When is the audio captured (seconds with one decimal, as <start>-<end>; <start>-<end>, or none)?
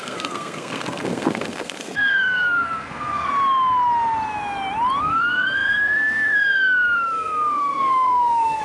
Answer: 3.3-5.0